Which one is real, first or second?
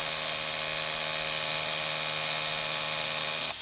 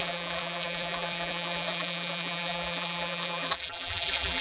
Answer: first